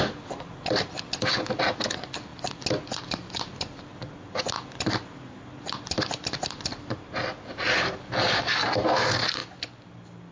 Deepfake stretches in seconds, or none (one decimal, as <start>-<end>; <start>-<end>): none

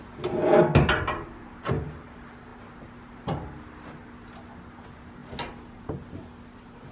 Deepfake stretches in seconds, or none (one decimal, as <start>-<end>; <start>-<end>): none

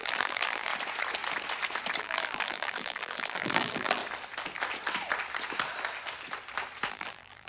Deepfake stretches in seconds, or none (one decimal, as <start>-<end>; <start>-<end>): 0.0-0.7; 2.0-4.0; 6.9-7.5